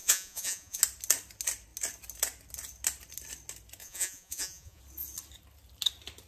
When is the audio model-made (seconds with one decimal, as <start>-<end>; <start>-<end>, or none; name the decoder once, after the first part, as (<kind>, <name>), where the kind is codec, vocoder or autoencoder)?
0.0-0.8 (vocoder, Vocos); 3.8-4.8